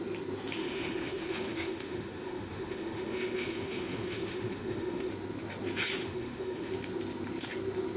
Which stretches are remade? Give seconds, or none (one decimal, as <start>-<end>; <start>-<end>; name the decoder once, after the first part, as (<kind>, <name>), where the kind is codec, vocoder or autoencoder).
0.6-5.1 (autoencoder, DAC-VAE); 6.0-6.7